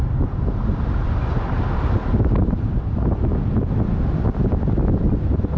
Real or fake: real